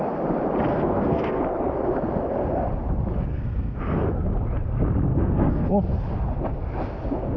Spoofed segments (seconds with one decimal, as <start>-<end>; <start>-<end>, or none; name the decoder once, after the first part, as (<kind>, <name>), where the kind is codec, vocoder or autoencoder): 0.7-1.4 (codec, SNAC); 3.3-3.8; 5.1-5.7

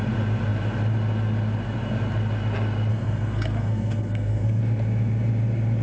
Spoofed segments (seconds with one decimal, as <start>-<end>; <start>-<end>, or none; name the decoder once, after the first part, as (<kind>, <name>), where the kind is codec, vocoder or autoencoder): 2.9-4.6 (codec, SNAC)